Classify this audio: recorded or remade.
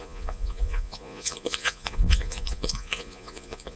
remade